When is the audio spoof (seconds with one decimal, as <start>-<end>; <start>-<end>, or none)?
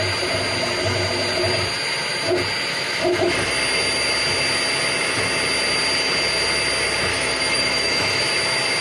2.7-3.5; 7.1-8.2